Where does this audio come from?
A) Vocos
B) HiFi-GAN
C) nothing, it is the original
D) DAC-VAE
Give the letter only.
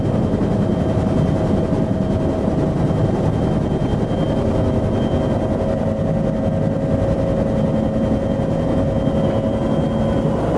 C